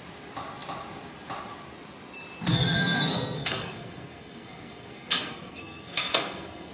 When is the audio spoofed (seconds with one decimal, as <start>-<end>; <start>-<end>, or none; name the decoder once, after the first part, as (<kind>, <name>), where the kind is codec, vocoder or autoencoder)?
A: 2.5-6.7 (codec, SNAC)